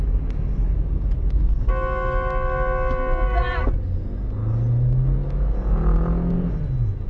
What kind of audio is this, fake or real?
real